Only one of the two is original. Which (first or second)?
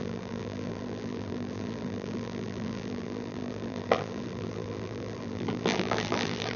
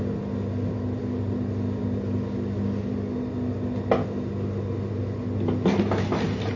second